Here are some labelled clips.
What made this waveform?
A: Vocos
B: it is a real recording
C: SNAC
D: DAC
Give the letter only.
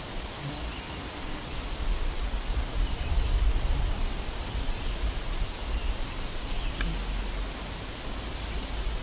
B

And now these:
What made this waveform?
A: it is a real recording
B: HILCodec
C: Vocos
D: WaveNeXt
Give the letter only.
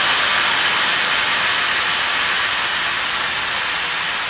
A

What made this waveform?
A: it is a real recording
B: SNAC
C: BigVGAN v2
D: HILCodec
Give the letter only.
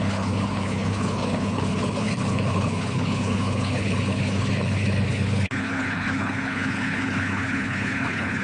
D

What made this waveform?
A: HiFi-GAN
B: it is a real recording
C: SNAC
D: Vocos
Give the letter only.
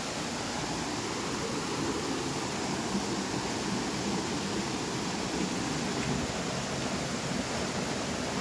B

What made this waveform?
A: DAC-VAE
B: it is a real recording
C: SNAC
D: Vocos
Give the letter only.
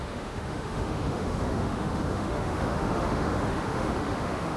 A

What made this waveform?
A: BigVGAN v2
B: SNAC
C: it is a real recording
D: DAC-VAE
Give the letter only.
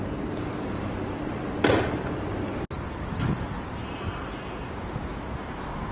C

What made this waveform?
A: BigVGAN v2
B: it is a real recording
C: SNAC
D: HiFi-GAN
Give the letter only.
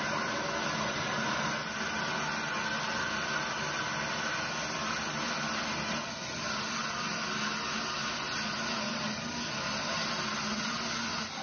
B